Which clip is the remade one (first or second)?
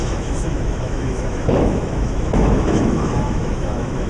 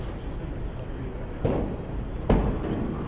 first